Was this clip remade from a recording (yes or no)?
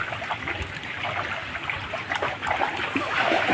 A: no